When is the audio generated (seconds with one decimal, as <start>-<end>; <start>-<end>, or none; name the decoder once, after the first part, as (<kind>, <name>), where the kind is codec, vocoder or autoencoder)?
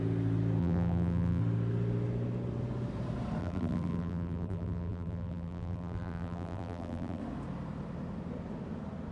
0.6-1.4 (vocoder, BigVGAN v2); 3.4-7.2